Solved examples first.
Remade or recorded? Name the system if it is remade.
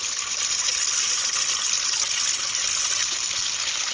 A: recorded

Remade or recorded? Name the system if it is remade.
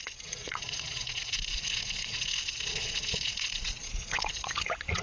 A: remade, vocoder, Vocos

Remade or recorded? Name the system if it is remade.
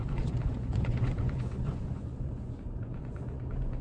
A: remade, vocoder, Vocos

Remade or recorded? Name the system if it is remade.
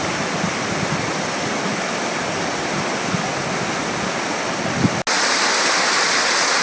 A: recorded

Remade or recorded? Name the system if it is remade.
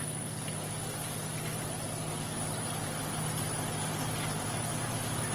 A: recorded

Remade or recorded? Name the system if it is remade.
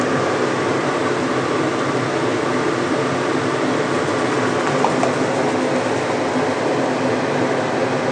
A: recorded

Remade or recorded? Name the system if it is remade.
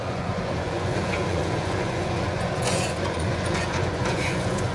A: remade, vocoder, Vocos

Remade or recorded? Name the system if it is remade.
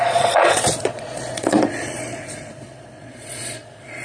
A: remade, vocoder, Vocos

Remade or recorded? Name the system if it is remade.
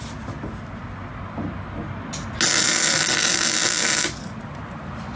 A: recorded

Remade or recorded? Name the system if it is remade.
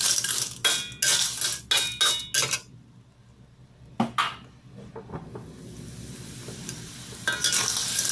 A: recorded